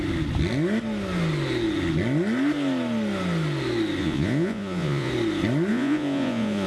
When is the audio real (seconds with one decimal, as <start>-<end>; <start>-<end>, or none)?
0.0-4.0; 5.1-5.7